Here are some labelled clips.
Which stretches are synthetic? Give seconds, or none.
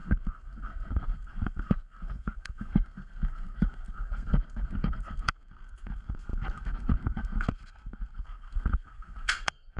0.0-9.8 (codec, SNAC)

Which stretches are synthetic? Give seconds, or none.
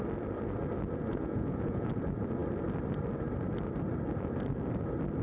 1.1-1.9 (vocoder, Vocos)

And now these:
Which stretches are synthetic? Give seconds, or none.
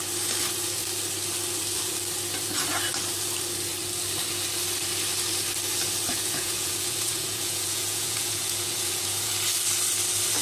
6.1-9.3 (vocoder, Vocos)